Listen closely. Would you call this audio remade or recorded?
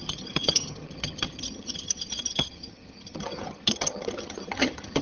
remade